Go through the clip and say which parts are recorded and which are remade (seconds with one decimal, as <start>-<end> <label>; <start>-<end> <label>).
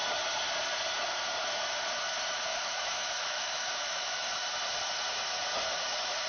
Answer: 0.0-2.5 recorded; 2.5-4.3 remade; 4.3-6.3 recorded